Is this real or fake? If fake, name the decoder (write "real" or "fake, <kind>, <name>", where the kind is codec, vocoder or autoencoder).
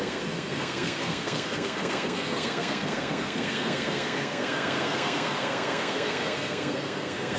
fake, codec, SNAC